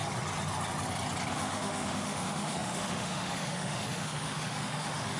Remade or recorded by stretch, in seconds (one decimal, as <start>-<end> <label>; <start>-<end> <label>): 0.0-1.3 recorded; 1.3-5.2 remade